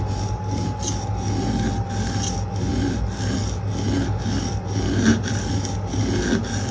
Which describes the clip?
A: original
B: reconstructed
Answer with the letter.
A